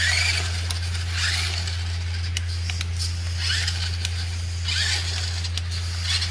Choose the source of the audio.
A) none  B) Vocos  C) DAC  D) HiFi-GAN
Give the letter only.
A